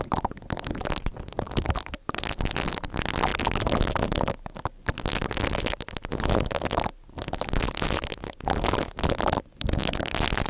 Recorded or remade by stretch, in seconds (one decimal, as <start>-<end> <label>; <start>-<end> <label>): 0.0-10.5 recorded